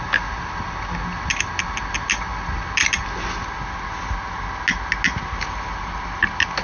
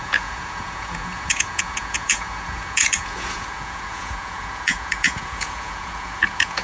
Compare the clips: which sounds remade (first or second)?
second